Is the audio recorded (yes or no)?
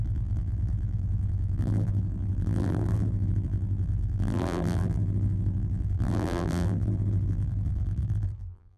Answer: no